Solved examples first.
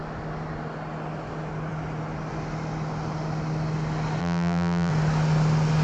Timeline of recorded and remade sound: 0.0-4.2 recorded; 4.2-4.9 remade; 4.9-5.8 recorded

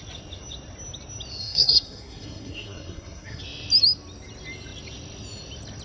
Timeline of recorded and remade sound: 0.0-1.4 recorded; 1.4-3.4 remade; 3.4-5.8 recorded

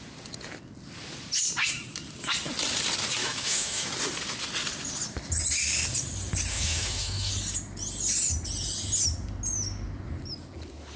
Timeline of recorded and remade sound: 0.0-3.2 recorded; 3.2-3.9 remade; 3.9-6.5 recorded; 6.5-7.3 remade; 7.3-11.0 recorded

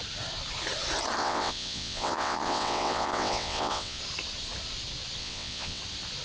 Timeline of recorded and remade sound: 0.0-1.2 recorded; 1.2-4.0 remade; 4.0-5.2 recorded; 5.2-5.8 remade; 5.8-6.2 recorded